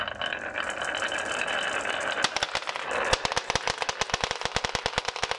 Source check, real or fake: real